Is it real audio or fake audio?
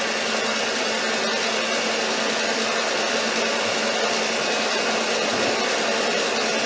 real